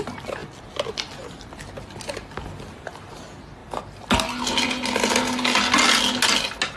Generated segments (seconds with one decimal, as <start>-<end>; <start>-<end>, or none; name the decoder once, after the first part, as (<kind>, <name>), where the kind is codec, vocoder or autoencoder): none